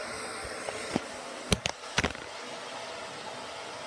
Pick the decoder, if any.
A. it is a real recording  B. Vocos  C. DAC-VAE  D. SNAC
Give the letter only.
A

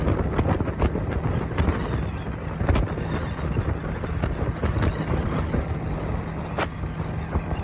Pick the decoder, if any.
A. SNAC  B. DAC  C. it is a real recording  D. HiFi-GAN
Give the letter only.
C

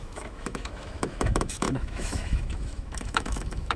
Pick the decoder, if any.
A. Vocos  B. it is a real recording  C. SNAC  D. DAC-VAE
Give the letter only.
D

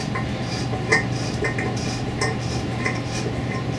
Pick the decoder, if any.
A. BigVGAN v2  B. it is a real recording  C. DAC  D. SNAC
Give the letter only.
B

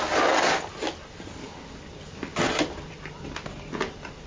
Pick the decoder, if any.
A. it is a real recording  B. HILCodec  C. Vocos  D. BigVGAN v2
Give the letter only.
A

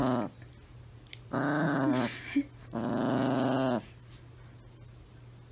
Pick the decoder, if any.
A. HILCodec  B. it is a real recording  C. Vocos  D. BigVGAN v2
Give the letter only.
B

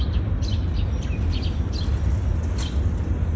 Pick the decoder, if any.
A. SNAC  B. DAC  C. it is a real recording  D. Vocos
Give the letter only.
C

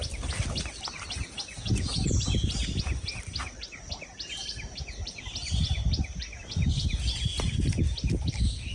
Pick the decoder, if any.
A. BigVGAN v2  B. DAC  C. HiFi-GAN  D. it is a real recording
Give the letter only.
D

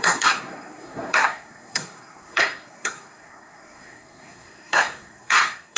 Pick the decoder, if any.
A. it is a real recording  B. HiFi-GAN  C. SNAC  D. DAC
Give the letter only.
C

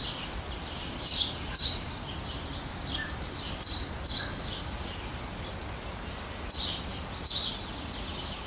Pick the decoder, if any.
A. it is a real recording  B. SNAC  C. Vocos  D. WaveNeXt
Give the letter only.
A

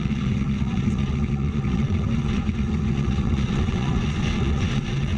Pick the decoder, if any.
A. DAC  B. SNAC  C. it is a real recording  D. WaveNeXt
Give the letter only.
D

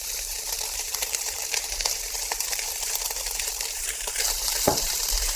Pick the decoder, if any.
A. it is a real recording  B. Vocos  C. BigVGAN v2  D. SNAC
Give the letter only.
C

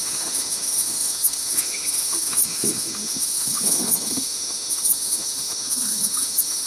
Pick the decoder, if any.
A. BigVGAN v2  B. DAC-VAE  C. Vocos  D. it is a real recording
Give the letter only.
B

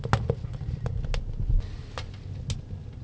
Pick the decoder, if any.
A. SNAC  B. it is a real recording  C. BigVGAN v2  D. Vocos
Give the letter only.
B